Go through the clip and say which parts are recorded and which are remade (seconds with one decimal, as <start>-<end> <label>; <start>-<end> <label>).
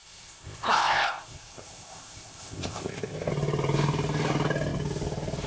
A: 0.0-3.3 remade; 3.3-5.5 recorded